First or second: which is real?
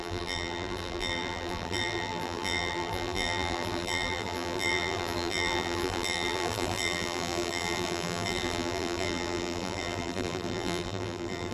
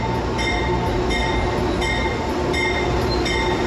second